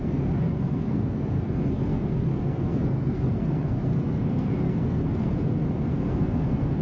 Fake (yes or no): yes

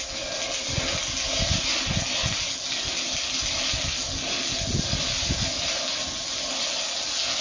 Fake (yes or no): no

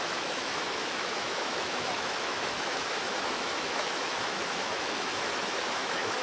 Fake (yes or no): yes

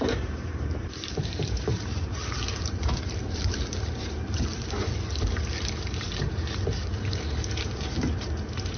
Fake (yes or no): yes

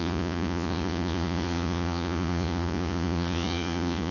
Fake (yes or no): yes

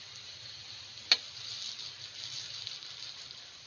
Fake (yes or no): no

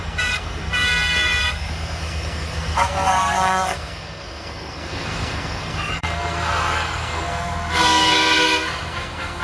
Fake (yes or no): yes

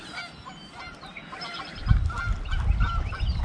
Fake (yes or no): no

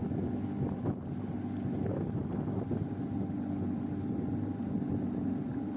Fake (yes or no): no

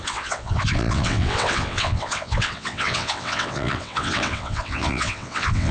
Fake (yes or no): yes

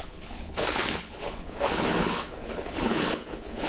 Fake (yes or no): yes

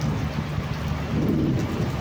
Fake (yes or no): no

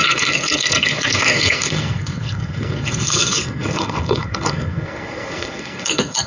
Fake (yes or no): yes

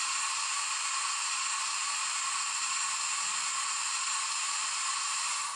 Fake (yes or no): no